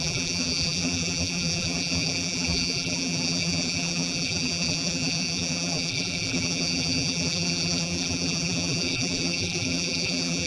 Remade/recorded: remade